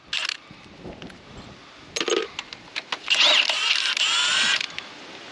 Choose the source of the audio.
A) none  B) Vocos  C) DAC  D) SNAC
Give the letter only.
A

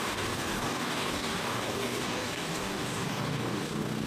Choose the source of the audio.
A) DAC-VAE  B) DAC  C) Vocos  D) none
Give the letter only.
B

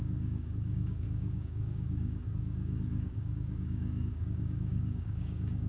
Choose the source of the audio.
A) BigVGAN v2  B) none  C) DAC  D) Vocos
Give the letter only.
C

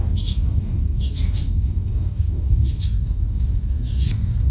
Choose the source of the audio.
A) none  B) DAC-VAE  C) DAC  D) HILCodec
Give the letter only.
C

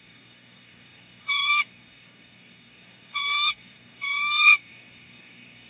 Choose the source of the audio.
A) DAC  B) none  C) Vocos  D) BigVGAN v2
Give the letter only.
A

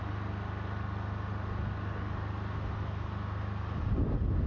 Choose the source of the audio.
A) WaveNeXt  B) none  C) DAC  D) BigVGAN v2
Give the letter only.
B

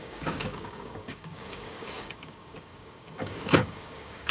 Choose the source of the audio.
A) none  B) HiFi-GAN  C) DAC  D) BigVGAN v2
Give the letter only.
C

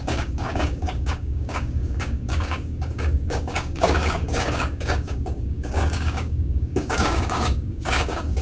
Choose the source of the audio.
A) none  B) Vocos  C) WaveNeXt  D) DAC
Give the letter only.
D